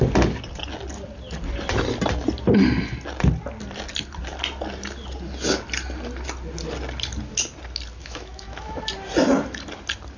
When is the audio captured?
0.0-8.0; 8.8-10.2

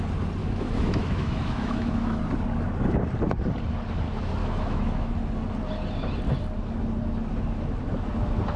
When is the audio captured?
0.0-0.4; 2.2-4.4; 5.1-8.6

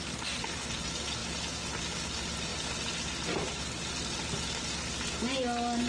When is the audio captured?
0.0-5.9

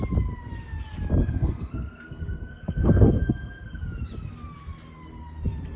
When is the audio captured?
0.0-1.2; 3.8-5.8